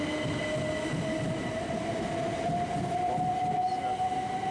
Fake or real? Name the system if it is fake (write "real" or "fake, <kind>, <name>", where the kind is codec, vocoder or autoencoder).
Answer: real